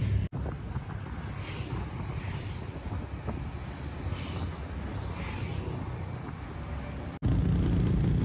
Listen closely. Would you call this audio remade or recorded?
recorded